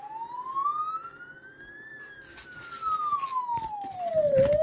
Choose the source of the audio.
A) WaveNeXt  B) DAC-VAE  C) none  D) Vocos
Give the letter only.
C